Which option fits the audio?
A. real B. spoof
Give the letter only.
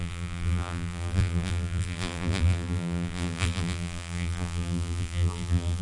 B